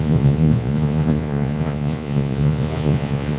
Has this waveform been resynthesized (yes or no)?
yes